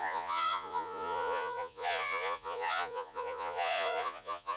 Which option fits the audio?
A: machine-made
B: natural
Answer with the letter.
A